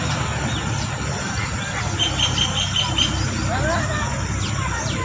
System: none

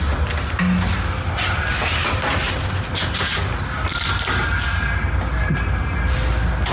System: none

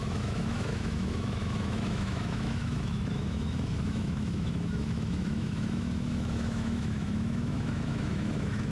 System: autoencoder, DAC-VAE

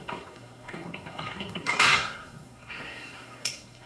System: codec, SNAC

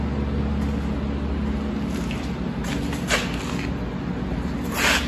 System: none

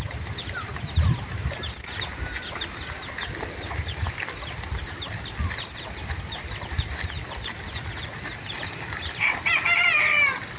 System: none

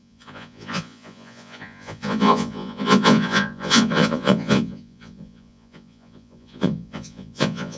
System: vocoder, Vocos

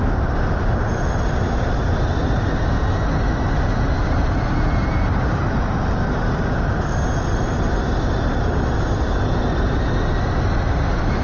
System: none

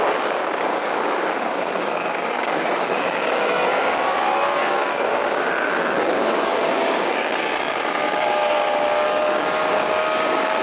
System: codec, DAC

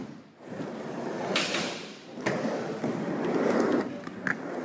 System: none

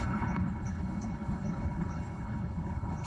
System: codec, HILCodec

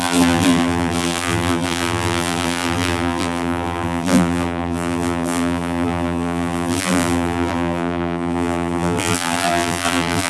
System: vocoder, BigVGAN v2